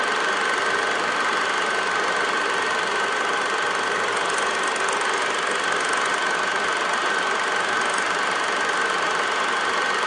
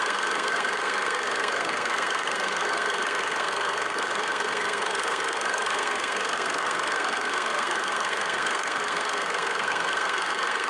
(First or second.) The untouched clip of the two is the first